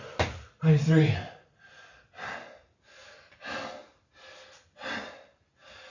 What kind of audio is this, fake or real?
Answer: real